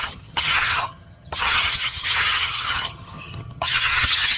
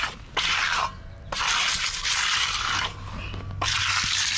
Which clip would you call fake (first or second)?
first